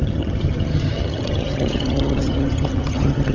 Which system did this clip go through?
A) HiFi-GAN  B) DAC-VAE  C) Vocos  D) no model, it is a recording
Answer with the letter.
A